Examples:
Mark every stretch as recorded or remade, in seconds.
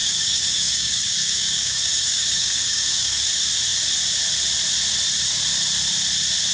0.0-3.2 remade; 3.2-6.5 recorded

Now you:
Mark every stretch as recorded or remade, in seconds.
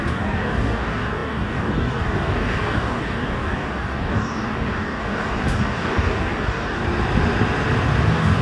0.0-6.8 remade; 6.8-8.0 recorded; 8.0-8.4 remade